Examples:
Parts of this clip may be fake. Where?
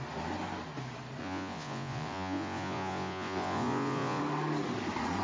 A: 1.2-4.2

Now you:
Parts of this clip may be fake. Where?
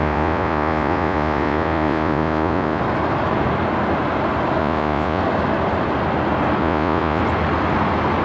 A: 0.0-2.8; 4.6-5.2; 6.6-7.2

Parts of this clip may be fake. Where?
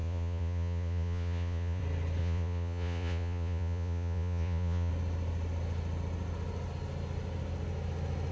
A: 0.0-1.8; 2.2-4.9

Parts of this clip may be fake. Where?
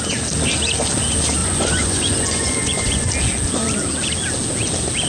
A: 1.4-3.1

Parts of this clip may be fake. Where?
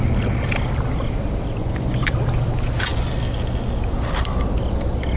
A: 1.6-2.1